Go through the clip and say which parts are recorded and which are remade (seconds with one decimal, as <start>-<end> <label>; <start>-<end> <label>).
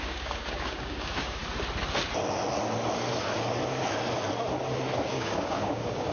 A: 0.0-1.4 remade; 1.4-5.1 recorded; 5.1-6.1 remade